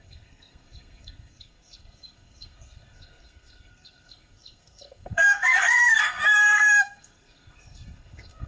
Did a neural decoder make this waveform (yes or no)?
yes